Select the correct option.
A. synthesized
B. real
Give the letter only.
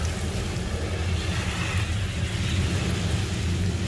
B